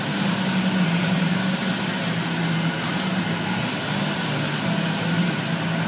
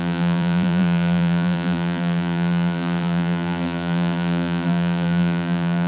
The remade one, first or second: second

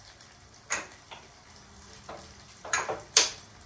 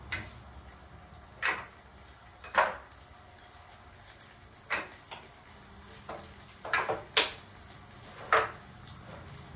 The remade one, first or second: first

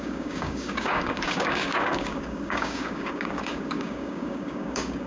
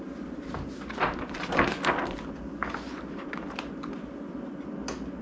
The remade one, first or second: first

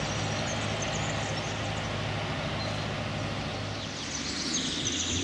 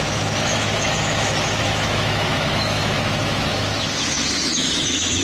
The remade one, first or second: second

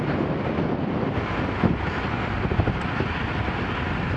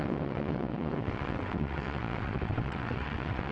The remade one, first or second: second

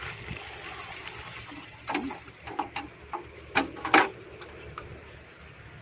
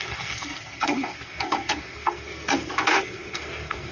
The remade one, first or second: second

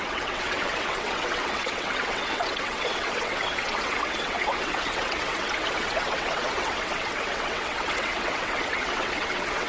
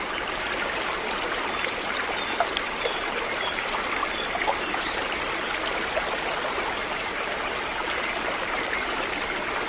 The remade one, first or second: first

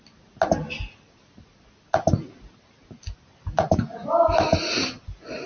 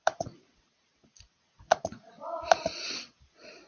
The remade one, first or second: second